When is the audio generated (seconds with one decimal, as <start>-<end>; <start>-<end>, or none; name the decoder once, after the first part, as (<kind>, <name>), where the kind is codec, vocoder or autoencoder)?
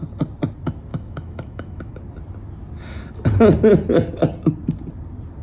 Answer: 0.9-1.9 (autoencoder, DAC-VAE)